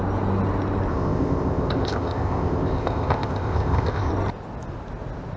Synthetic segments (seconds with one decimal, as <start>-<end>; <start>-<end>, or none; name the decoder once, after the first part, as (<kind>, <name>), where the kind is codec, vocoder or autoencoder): 0.9-4.1 (codec, ZipCodec)